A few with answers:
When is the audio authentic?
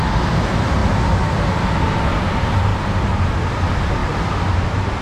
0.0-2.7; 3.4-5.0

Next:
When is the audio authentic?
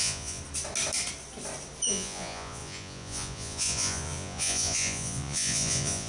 0.4-1.9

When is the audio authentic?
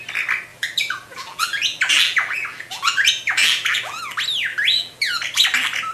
0.0-0.5; 4.0-4.5; 5.1-5.9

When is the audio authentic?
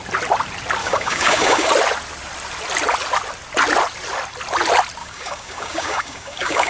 0.0-0.8; 1.7-5.0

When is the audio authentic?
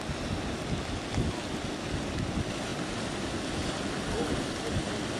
0.0-5.2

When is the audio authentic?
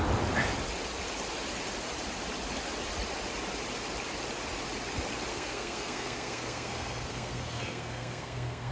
0.0-5.3